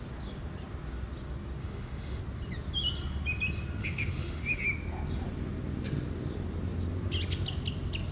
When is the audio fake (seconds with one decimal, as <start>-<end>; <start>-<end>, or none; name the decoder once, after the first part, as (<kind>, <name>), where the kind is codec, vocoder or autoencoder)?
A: 1.6-2.2 (autoencoder, DAC-VAE); 3.8-4.6